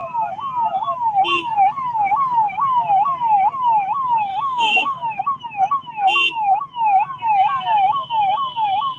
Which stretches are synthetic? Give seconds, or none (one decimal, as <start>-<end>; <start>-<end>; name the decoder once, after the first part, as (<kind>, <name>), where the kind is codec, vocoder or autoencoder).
4.3-5.2 (autoencoder, DAC-VAE)